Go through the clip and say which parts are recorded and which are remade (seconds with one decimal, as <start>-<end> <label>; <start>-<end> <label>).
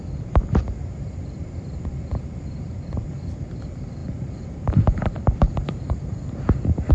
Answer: 0.0-6.9 remade